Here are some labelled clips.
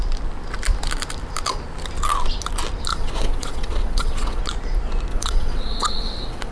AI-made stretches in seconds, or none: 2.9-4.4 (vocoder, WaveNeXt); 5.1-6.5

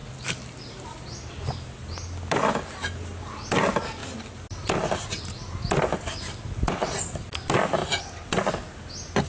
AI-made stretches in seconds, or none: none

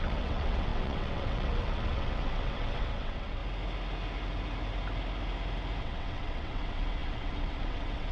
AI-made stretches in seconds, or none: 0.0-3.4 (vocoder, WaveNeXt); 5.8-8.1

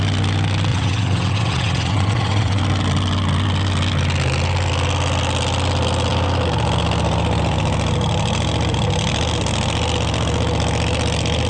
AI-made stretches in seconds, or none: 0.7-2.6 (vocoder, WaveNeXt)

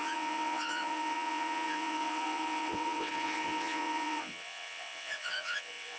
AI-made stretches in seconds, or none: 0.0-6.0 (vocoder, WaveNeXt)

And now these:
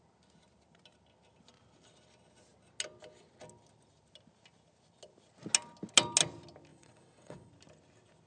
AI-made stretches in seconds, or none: 6.7-7.5 (vocoder, WaveNeXt)

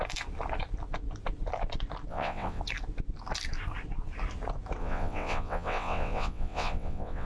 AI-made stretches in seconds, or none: 2.1-2.6 (vocoder, WaveNeXt); 4.8-7.3